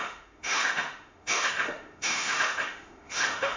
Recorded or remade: remade